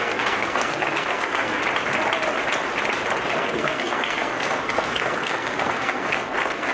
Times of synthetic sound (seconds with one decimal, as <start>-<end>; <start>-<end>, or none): 0.0-1.6; 3.3-6.7